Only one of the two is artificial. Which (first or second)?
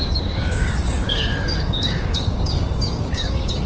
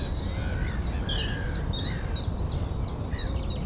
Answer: first